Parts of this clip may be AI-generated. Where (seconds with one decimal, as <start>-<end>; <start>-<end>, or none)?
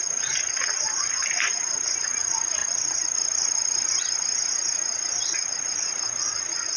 none